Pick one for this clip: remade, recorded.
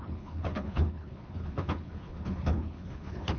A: remade